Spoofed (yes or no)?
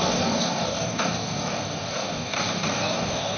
yes